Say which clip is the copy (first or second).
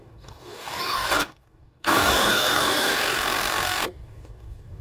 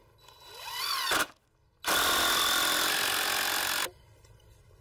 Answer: first